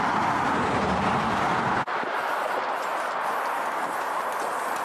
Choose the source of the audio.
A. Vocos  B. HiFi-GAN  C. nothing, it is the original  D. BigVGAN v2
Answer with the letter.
C